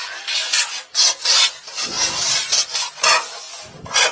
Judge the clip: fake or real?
real